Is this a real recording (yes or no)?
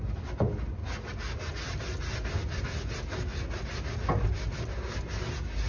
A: yes